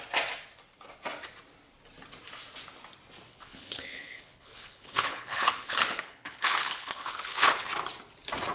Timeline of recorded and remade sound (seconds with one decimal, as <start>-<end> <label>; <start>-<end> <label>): 0.0-3.3 recorded; 3.3-7.7 remade; 7.7-8.5 recorded